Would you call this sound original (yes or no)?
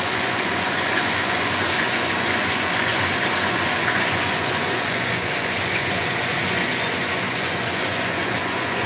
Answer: no